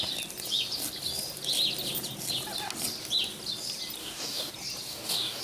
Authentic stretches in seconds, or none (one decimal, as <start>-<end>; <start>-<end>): 0.0-4.0; 4.5-4.9